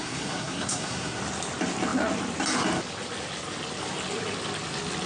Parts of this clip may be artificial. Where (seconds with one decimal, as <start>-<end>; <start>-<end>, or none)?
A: 0.0-1.2

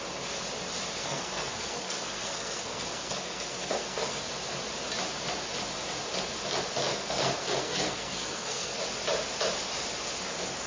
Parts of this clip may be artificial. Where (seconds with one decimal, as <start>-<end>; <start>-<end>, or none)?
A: 1.0-4.2; 6.9-8.8

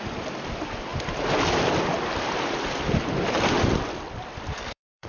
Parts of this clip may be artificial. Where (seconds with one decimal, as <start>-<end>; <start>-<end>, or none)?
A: 4.5-5.1

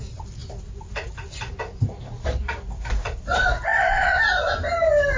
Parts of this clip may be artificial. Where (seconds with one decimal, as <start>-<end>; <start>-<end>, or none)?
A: none

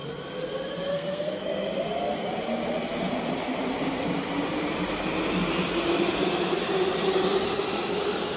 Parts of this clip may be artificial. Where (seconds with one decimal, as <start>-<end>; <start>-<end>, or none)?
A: 0.9-1.4

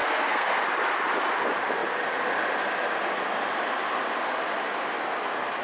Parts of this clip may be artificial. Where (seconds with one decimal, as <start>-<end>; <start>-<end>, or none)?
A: 0.0-0.6

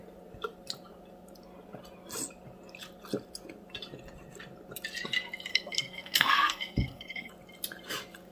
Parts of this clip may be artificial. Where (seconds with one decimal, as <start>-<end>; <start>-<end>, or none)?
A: 5.5-7.3